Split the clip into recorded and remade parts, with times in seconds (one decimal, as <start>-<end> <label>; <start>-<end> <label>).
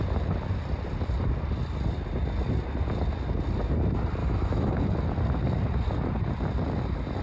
0.0-4.2 recorded; 4.2-4.8 remade; 4.8-7.2 recorded